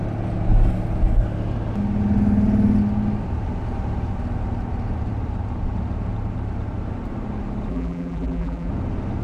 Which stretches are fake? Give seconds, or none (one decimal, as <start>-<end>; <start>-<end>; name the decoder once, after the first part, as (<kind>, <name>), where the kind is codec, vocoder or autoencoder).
7.7-8.7 (vocoder, BigVGAN v2)